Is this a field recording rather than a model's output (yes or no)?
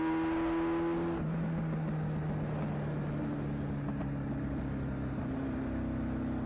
yes